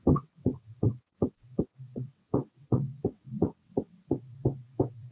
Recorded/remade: remade